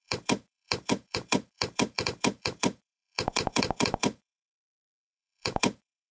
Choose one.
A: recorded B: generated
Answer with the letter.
B